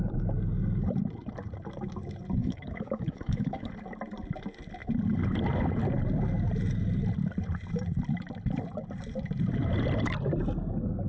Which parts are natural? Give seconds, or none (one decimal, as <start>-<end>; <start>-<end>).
0.0-2.4; 3.7-11.1